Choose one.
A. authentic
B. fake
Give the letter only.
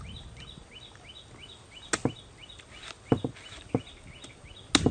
A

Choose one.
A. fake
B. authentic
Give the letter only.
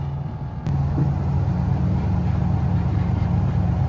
B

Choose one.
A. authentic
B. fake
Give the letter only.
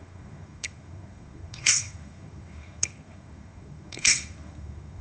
B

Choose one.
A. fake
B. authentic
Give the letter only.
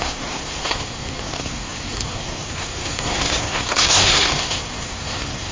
A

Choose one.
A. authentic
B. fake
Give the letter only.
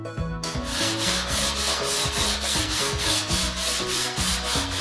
B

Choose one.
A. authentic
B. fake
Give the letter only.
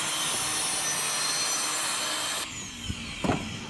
A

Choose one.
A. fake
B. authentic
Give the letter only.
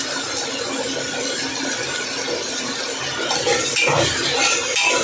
B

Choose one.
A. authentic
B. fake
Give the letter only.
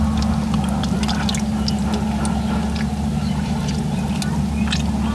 A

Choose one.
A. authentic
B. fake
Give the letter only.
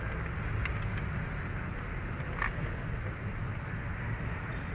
A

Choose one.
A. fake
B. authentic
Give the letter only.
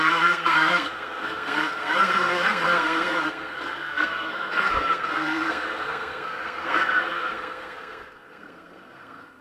A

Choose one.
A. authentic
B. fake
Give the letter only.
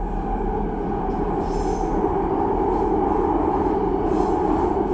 A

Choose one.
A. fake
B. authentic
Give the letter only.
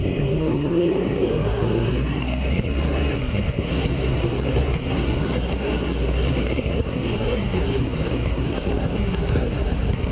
A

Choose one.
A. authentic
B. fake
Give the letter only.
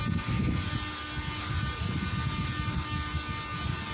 A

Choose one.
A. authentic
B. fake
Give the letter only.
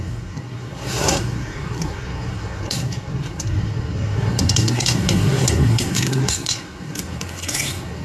B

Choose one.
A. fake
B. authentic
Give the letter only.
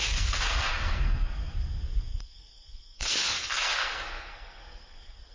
A